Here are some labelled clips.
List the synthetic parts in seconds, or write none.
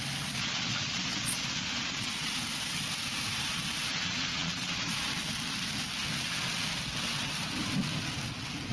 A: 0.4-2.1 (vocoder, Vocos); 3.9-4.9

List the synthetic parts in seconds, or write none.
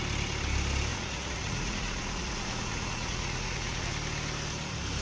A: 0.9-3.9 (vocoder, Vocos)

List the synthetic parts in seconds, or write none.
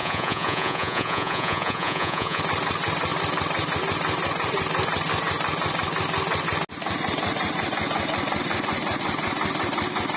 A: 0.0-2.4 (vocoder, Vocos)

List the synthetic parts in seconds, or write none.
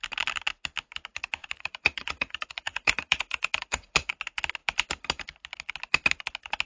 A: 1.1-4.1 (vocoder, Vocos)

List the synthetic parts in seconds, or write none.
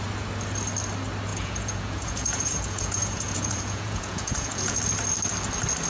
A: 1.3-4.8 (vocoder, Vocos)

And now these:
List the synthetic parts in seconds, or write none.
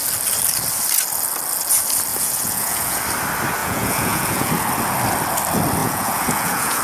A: 2.1-3.0 (vocoder, Vocos); 3.6-4.5; 5.8-6.8